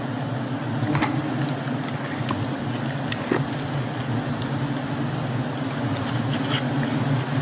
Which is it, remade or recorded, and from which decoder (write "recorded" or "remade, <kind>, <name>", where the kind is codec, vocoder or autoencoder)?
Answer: recorded